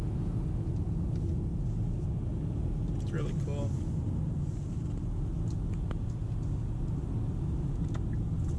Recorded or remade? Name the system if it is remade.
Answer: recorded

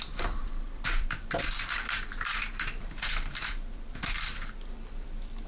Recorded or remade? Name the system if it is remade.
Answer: remade, vocoder, BigVGAN v2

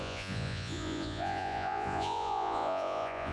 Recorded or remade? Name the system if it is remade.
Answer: remade, vocoder, Vocos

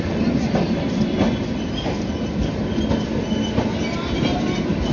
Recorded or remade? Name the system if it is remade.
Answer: recorded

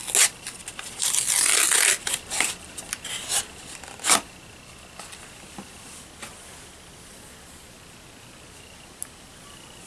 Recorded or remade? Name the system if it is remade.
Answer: recorded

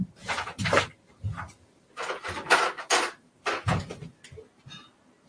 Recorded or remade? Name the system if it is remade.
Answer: recorded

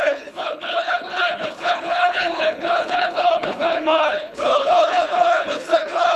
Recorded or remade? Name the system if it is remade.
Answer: remade, codec, HILCodec